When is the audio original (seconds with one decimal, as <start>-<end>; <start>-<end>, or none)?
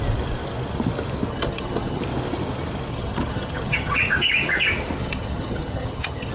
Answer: 0.0-1.3; 2.0-2.9; 4.0-5.0